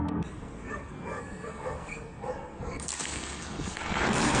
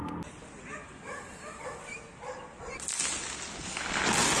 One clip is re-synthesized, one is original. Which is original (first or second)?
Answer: second